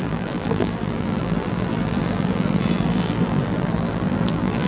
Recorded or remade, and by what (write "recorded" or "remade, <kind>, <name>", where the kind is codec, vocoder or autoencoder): remade, vocoder, BigVGAN v2